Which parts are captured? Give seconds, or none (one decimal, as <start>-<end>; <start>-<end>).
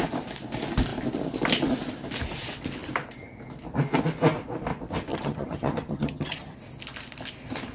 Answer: 0.0-5.1; 6.6-7.7